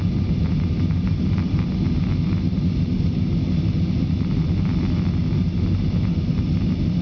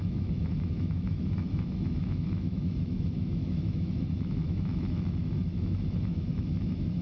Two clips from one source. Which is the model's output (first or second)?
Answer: second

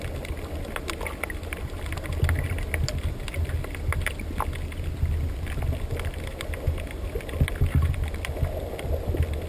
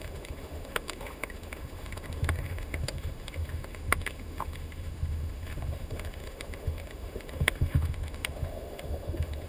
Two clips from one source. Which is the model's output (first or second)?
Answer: second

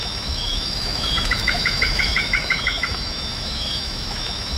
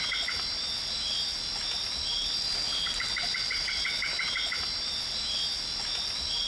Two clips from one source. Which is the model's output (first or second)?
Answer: first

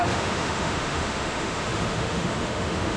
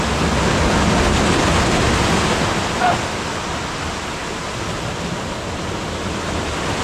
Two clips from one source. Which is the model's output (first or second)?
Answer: first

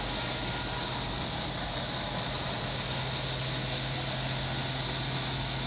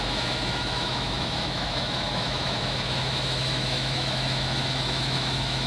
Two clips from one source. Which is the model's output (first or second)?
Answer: second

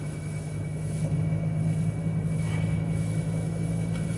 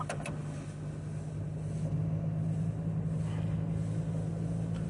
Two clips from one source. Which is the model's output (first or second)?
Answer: first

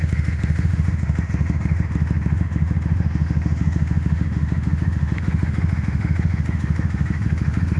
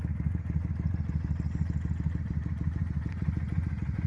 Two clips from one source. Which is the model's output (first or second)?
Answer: first